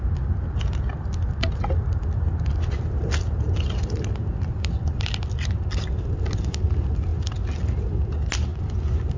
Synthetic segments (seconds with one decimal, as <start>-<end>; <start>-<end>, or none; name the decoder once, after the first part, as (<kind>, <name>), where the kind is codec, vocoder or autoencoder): none